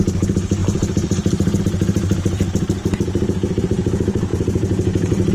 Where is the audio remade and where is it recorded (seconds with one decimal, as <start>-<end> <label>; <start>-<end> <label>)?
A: 0.0-2.8 remade; 2.8-3.6 recorded; 3.6-5.3 remade